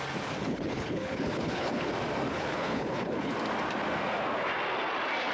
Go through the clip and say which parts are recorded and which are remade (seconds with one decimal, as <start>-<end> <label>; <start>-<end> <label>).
0.0-0.4 recorded; 0.4-1.9 remade; 1.9-2.3 recorded; 2.3-3.3 remade; 3.3-5.3 recorded